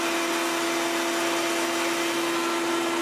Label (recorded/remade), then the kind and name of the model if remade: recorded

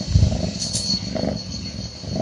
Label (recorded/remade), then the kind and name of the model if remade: recorded